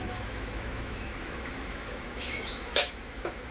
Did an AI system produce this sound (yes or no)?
yes